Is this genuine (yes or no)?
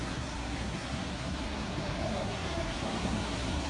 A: no